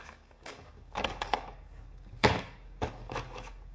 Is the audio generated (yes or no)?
yes